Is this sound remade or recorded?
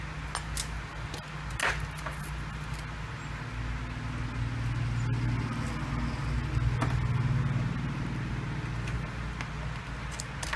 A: recorded